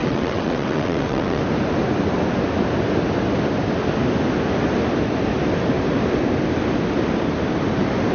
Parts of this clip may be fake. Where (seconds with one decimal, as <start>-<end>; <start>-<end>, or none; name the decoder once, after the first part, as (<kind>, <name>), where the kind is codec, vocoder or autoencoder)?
0.0-1.4 (vocoder, WaveNeXt)